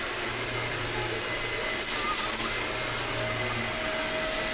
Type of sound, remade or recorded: recorded